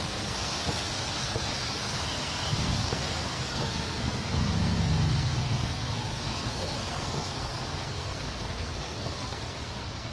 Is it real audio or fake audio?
fake